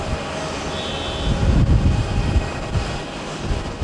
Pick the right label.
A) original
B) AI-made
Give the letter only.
A